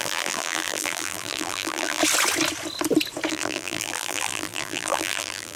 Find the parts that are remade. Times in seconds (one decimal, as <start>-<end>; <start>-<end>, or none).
0.0-2.0; 3.3-5.6